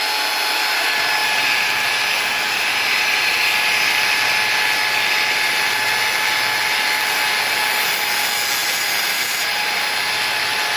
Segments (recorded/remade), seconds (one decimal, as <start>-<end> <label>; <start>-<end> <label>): 0.0-1.2 recorded; 1.2-1.9 remade; 1.9-8.6 recorded; 8.6-9.8 remade; 9.8-10.8 recorded